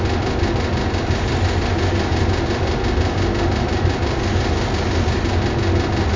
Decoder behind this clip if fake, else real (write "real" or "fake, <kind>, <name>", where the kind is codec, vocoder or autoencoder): real